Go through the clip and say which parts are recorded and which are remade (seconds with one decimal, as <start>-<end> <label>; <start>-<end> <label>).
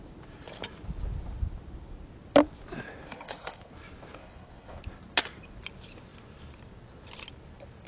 0.0-3.1 recorded; 3.1-3.7 remade; 3.7-4.2 recorded; 4.2-4.8 remade; 4.8-7.9 recorded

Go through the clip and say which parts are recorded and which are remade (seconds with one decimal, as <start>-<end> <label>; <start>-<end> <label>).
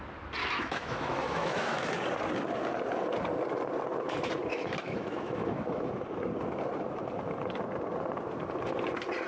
0.0-0.4 recorded; 0.4-2.0 remade; 2.0-4.5 recorded; 4.5-5.9 remade; 5.9-9.3 recorded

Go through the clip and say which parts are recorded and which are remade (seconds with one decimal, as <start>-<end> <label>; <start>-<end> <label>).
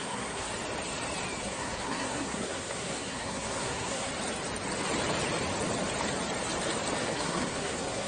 0.0-0.5 remade; 0.5-1.4 recorded; 1.4-4.1 remade; 4.1-7.0 recorded; 7.0-8.1 remade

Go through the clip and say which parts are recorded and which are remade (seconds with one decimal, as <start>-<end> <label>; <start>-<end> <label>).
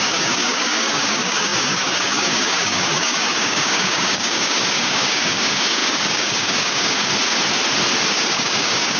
0.0-7.1 remade; 7.1-8.1 recorded; 8.1-9.0 remade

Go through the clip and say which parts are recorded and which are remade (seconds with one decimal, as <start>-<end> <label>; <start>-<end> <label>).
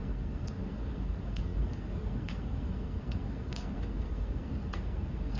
0.0-5.4 remade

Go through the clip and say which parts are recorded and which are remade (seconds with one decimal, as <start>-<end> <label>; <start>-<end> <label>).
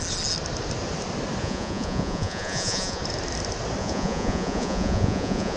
0.0-1.4 recorded; 1.4-3.0 remade; 3.0-3.8 recorded; 3.8-5.6 remade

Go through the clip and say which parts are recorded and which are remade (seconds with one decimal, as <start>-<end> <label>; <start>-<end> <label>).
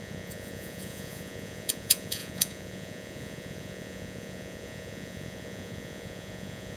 0.0-6.8 remade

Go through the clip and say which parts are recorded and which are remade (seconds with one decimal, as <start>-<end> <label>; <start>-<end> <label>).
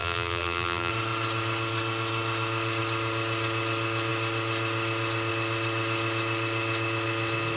0.0-0.9 remade; 0.9-7.6 recorded